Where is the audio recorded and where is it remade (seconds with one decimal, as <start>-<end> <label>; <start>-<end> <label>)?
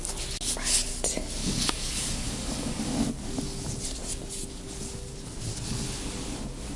0.0-1.4 recorded; 1.4-2.8 remade; 2.8-6.8 recorded